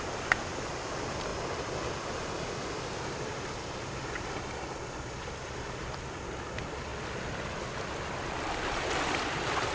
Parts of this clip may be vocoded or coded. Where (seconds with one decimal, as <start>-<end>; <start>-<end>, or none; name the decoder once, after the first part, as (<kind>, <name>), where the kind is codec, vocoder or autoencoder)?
none